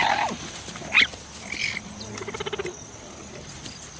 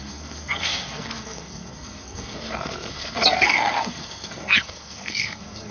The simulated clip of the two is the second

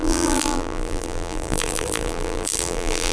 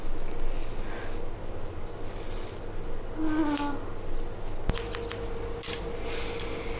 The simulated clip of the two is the first